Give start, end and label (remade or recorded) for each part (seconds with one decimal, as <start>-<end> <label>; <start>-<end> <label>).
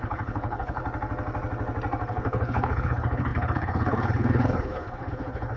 0.0-0.8 remade; 0.8-2.1 recorded; 2.1-5.6 remade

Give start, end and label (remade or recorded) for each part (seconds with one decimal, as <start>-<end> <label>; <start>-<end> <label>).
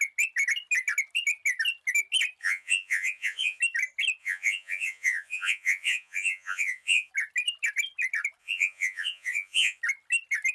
0.0-2.4 recorded; 2.4-3.6 remade; 3.6-4.2 recorded; 4.2-7.1 remade; 7.1-8.4 recorded; 8.4-9.8 remade; 9.8-10.5 recorded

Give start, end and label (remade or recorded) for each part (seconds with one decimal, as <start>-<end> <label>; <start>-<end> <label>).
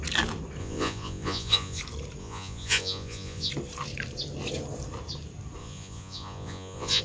0.0-0.6 recorded; 0.6-1.8 remade; 1.8-2.2 recorded; 2.2-3.5 remade; 3.5-5.6 recorded; 5.6-7.0 remade